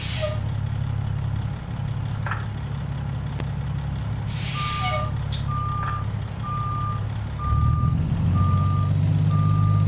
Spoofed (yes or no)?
no